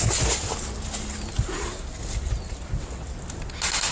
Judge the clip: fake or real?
real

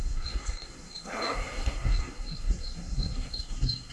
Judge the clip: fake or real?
fake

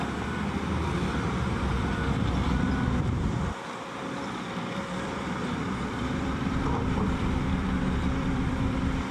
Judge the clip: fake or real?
fake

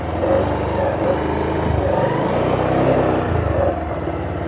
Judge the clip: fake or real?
real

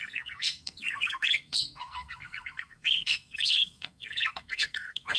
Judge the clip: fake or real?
fake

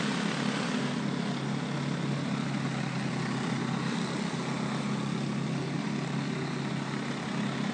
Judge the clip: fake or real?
real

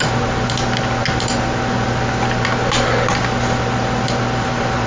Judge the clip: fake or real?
real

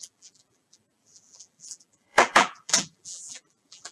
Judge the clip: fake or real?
fake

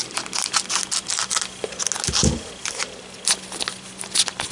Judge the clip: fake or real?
real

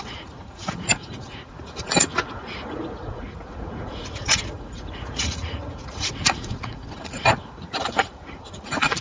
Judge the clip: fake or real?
fake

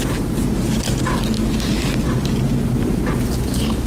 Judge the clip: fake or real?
real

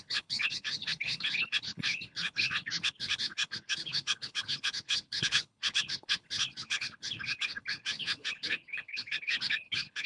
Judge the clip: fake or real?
fake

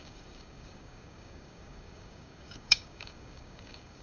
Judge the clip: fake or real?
fake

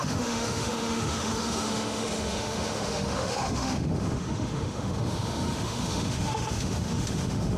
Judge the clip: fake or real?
fake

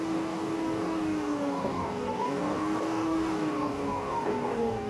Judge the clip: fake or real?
fake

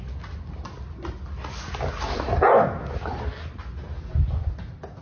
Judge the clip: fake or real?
real